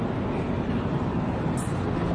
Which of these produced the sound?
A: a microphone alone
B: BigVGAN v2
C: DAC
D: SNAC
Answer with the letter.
A